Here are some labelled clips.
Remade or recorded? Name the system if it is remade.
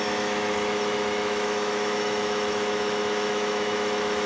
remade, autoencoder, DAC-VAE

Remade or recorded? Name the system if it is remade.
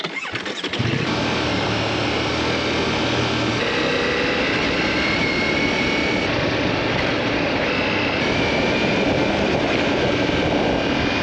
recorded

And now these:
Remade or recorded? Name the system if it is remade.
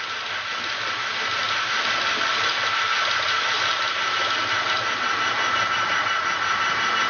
recorded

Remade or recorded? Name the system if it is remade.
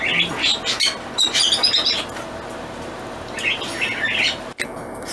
recorded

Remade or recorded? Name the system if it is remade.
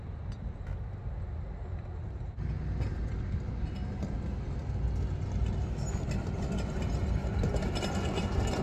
recorded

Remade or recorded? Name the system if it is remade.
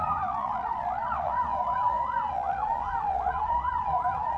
remade, vocoder, Vocos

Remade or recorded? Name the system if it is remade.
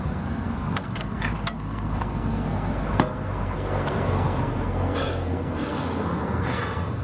remade, codec, SNAC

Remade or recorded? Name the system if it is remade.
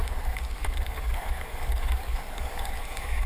remade, codec, DAC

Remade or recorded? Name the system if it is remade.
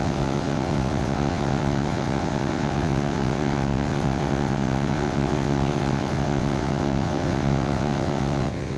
remade, vocoder, WaveNeXt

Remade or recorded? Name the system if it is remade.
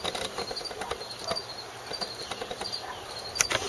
recorded